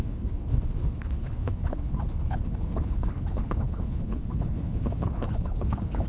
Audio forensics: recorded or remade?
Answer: remade